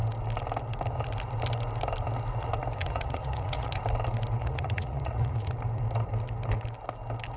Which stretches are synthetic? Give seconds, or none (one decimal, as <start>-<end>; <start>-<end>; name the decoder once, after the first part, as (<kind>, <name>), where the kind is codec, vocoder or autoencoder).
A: 2.8-3.8 (vocoder, Vocos); 4.4-5.5